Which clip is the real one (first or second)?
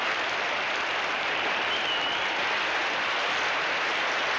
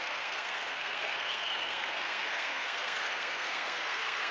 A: first